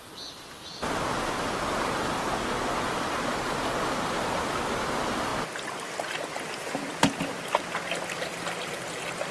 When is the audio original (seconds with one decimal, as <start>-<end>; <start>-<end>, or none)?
0.0-9.3